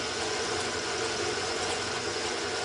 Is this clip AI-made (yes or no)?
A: yes